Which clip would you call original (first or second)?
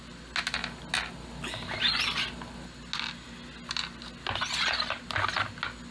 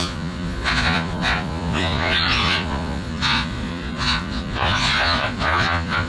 first